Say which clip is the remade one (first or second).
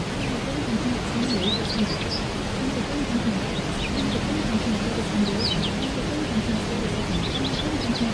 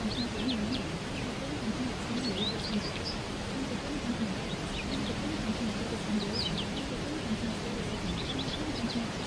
second